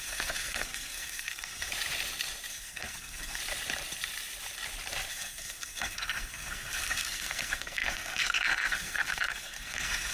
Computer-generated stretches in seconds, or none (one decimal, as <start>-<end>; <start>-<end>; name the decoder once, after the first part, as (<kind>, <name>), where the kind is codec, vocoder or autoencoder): 0.0-1.7 (codec, SNAC); 2.5-3.4; 5.1-10.1